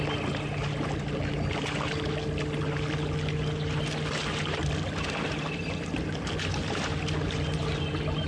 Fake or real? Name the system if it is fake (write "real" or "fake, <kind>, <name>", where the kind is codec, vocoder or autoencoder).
real